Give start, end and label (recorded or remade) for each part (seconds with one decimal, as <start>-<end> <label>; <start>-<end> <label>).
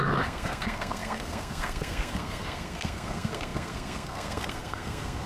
0.0-5.3 remade